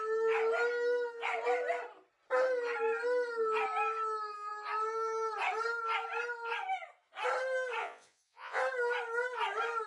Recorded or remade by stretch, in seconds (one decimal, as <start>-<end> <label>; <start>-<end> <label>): 0.0-7.8 recorded; 7.8-8.6 remade; 8.6-9.9 recorded